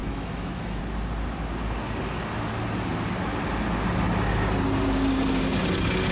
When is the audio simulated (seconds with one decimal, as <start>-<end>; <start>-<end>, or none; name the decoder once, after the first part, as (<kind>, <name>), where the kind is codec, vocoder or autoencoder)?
0.0-0.8 (autoencoder, DAC-VAE)